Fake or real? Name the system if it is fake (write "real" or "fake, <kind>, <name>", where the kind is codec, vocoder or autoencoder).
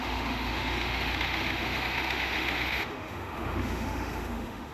fake, autoencoder, DAC-VAE